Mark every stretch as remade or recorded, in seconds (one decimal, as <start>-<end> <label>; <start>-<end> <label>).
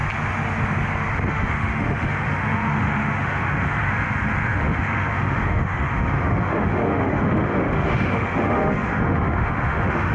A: 0.0-1.3 recorded; 1.3-10.1 remade